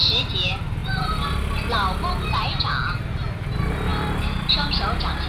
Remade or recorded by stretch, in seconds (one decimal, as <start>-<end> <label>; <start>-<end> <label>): 0.0-5.3 recorded